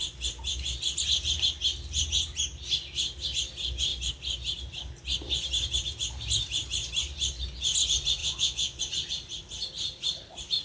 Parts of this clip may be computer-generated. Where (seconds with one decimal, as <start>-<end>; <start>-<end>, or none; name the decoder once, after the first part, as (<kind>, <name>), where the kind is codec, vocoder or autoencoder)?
8.2-8.8 (vocoder, Vocos)